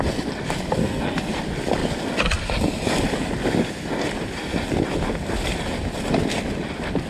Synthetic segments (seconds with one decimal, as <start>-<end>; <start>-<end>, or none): 0.8-1.4